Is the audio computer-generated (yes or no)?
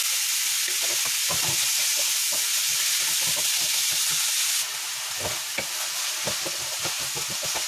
no